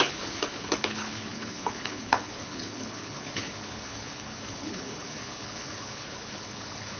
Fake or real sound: fake